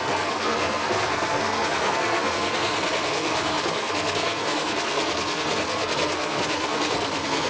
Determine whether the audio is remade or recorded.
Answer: remade